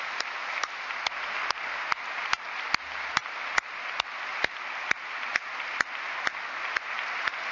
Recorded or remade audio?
recorded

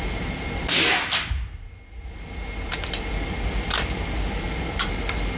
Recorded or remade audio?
recorded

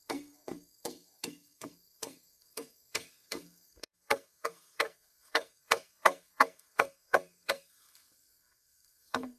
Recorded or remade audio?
remade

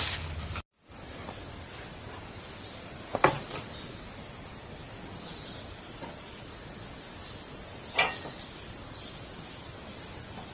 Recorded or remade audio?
recorded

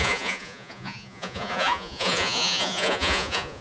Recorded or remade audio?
remade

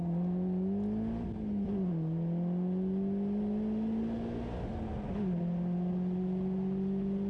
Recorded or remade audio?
recorded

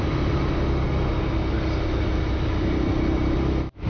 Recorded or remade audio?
recorded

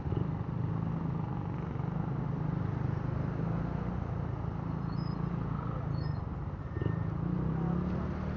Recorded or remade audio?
recorded